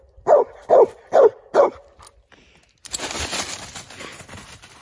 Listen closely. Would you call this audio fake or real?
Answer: real